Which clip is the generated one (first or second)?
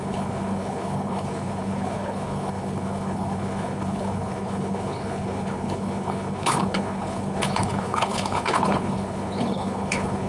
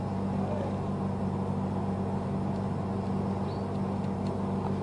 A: first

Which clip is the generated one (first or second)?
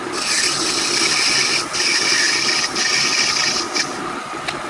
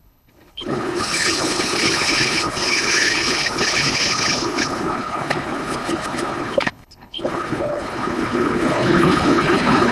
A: second